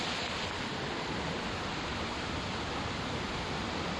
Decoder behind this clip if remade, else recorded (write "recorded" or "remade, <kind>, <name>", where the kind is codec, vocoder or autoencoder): recorded